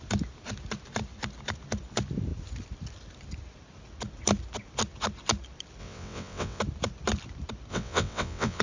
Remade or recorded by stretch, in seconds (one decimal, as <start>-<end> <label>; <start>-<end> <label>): 0.0-5.8 recorded; 5.8-6.6 remade; 6.6-7.7 recorded; 7.7-8.6 remade